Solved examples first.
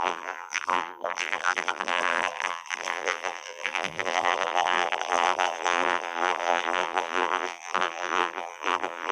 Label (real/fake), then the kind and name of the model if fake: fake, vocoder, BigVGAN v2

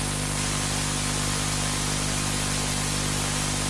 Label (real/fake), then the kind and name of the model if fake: real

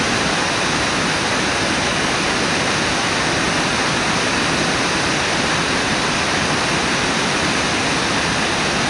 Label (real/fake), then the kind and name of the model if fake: real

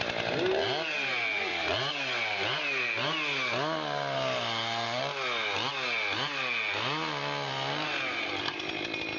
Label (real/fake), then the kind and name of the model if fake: real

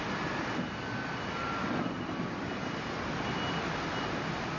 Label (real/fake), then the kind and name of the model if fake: real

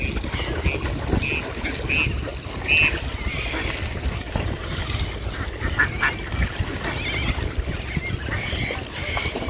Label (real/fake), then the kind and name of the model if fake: real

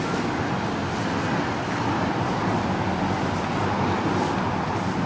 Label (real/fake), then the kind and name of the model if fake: real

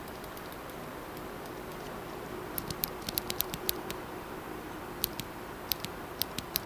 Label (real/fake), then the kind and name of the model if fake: fake, vocoder, BigVGAN v2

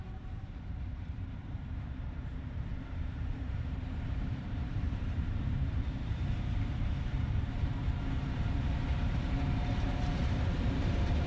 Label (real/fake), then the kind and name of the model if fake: fake, vocoder, BigVGAN v2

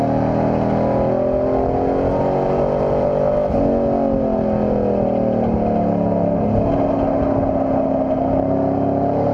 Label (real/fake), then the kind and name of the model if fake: real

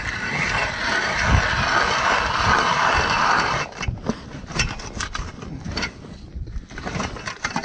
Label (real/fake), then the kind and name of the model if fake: fake, vocoder, BigVGAN v2